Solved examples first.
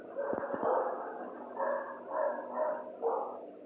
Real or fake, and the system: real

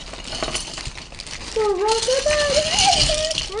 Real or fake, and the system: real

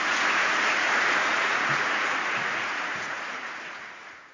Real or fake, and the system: fake, vocoder, Vocos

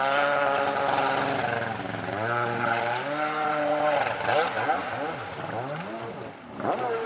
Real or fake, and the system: real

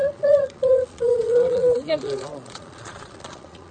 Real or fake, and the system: fake, vocoder, Vocos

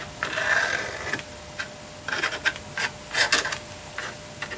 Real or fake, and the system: real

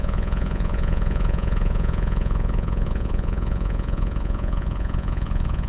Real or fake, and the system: fake, vocoder, Vocos